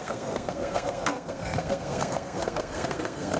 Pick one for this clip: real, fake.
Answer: fake